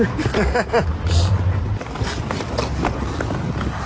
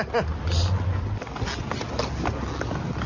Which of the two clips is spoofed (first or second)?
first